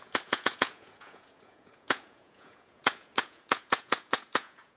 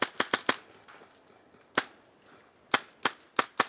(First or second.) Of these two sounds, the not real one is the first